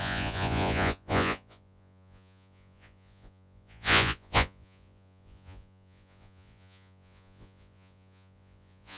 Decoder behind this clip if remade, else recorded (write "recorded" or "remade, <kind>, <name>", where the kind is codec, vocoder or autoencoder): remade, vocoder, Vocos